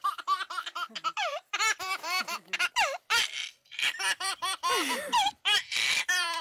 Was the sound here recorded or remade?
remade